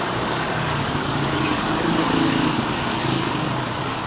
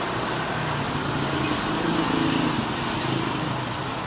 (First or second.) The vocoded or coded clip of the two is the first